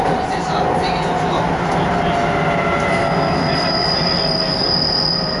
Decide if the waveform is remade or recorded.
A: recorded